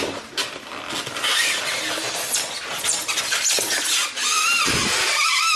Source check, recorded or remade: recorded